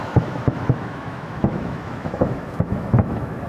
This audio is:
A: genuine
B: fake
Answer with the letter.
B